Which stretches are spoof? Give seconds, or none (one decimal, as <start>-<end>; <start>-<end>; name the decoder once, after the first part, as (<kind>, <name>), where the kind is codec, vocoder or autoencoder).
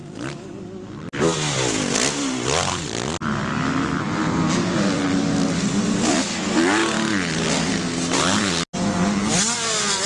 none